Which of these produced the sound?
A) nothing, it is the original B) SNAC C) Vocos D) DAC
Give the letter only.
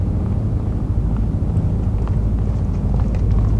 A